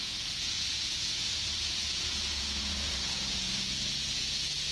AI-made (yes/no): yes